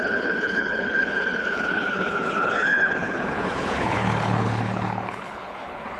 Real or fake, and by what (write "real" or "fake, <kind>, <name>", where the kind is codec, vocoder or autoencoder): fake, codec, HILCodec